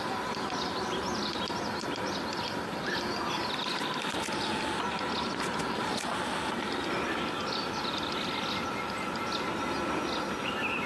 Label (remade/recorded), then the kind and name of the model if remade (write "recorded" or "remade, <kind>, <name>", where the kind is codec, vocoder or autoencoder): recorded